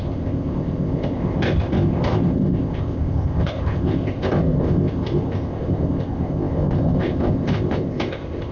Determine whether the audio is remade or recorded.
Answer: remade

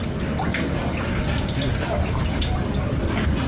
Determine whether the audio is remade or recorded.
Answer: recorded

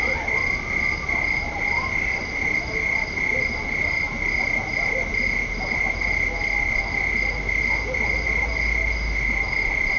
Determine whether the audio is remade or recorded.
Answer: recorded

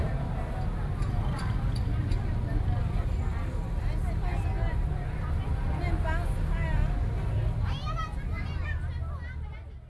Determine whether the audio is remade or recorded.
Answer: recorded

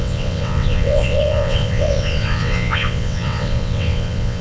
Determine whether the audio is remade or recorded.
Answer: remade